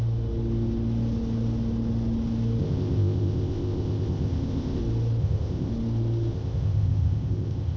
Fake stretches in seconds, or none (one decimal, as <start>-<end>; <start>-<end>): 2.6-4.8; 5.2-5.7; 6.3-7.8